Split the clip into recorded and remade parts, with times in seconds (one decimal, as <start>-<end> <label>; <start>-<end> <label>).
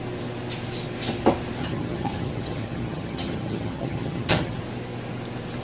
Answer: 0.0-1.6 recorded; 1.6-4.6 remade; 4.6-5.6 recorded